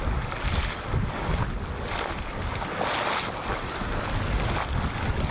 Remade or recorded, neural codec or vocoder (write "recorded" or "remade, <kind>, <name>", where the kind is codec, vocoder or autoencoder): recorded